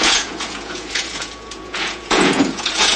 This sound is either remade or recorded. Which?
remade